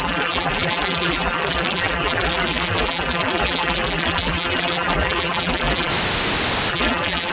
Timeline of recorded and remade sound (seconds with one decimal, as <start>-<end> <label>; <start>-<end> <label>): 0.0-5.9 remade; 5.9-6.7 recorded; 6.7-7.3 remade